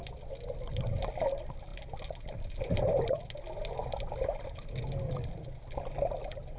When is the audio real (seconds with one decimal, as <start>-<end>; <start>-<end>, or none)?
0.0-6.6